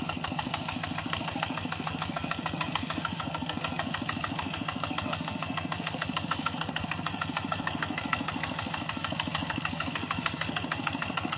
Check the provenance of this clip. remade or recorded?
remade